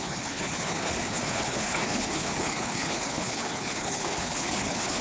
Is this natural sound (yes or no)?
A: no